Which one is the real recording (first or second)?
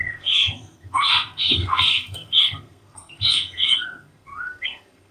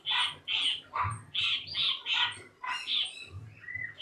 second